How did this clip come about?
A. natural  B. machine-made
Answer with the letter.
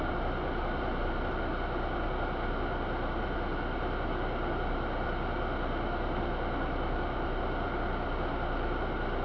A